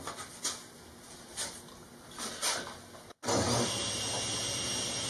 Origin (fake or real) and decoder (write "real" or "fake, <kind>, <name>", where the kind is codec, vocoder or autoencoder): real